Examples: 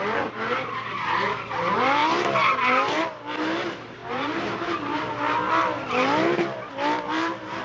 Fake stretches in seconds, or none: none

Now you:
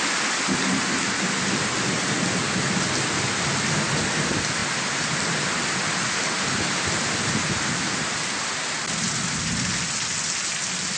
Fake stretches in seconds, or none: none

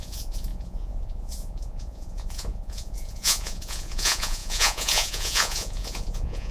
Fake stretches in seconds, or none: 0.0-6.5 (vocoder, Vocos)

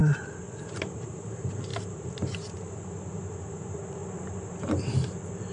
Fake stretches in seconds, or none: 0.7-4.0 (vocoder, BigVGAN v2)

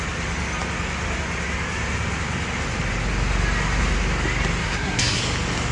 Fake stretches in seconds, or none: 4.6-5.2 (codec, SNAC)

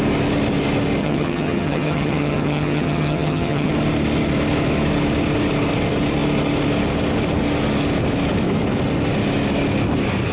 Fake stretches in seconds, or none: 1.0-3.7 (vocoder, HiFi-GAN)